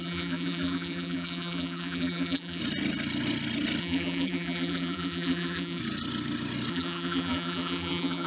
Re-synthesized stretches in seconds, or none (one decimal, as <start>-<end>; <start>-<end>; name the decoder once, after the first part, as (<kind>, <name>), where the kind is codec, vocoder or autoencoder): 0.0-2.6 (vocoder, BigVGAN v2); 3.8-5.8; 6.7-8.3